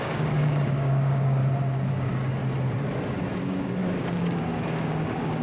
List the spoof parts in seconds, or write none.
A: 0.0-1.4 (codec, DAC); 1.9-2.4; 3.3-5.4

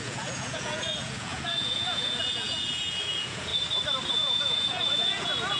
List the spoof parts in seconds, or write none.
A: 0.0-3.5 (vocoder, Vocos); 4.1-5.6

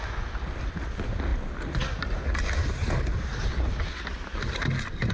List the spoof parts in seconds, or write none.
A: none